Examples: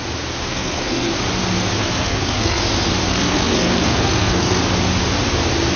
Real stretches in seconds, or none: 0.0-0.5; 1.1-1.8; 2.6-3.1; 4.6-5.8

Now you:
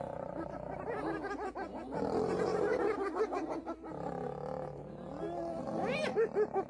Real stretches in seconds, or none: 0.0-6.7

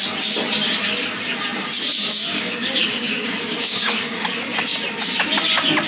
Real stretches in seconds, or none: 0.0-2.1; 4.0-5.9

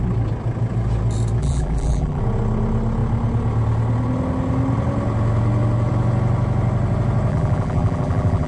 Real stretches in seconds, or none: 0.0-1.4; 2.2-7.3

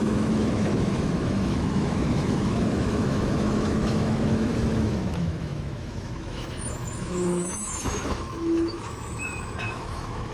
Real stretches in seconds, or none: none